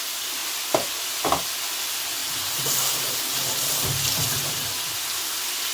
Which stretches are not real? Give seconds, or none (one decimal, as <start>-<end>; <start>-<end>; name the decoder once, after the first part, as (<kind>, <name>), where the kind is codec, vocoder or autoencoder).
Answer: 2.2-4.5 (vocoder, BigVGAN v2)